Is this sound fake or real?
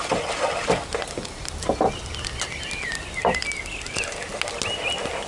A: real